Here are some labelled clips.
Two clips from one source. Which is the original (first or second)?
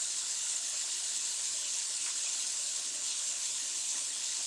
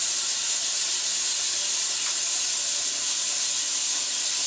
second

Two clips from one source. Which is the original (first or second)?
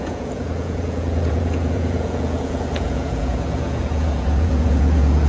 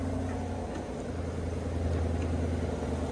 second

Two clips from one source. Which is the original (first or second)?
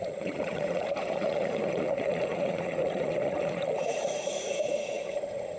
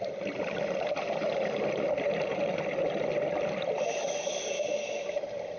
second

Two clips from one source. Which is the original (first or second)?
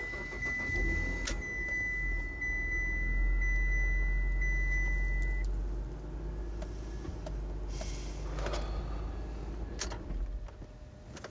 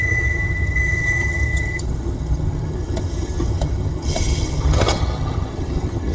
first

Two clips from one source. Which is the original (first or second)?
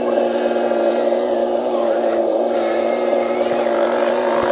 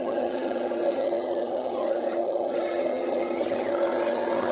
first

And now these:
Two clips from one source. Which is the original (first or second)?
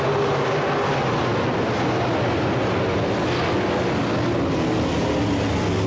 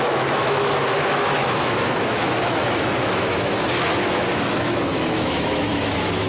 first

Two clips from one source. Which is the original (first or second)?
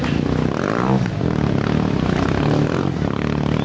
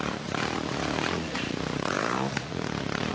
first